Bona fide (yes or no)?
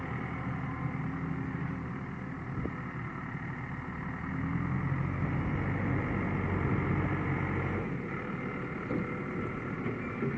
yes